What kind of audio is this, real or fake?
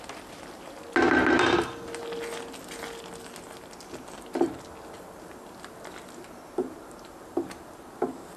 real